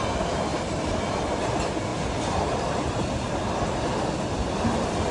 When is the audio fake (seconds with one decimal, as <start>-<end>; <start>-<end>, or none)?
none